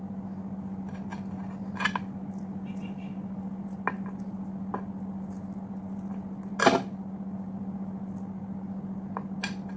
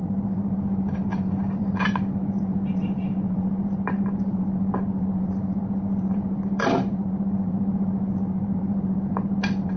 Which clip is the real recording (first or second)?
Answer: first